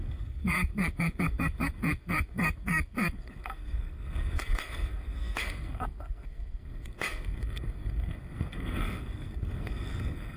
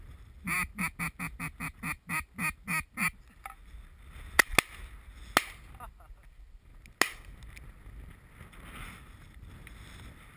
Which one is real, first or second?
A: second